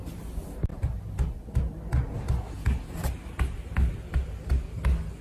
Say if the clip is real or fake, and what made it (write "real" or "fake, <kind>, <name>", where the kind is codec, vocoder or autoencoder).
real